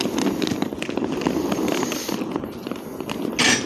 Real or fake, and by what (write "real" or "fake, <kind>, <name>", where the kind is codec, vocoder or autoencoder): real